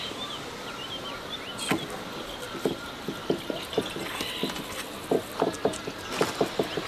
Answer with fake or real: real